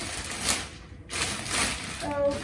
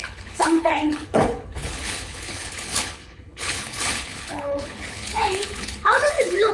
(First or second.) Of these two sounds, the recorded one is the first